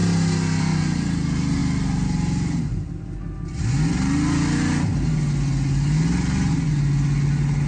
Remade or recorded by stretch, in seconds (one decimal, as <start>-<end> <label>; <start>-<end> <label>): 0.0-7.7 recorded